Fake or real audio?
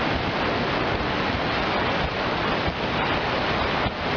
real